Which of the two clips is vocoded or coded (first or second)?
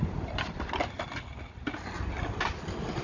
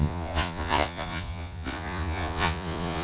second